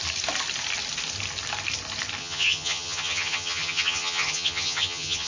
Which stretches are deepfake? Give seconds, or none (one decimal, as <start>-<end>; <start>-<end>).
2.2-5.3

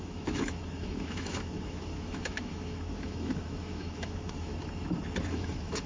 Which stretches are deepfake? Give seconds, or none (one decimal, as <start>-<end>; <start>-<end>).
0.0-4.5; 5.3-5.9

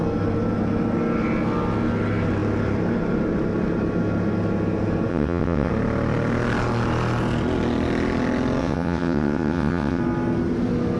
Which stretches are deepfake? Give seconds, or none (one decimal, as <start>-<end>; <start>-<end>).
5.1-5.7; 8.6-10.0

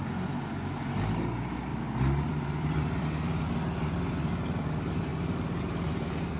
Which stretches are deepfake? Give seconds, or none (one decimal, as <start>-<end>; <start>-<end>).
1.7-3.0

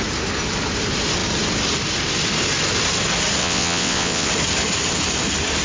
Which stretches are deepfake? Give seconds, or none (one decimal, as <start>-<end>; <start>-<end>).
3.4-4.3